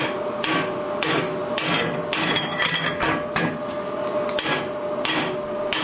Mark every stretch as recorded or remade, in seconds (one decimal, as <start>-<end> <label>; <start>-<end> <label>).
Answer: 0.0-5.8 recorded